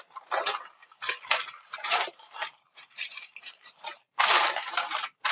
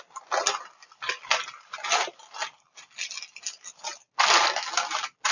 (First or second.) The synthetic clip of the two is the first